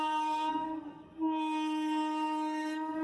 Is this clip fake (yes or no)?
yes